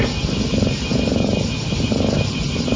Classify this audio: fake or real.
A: real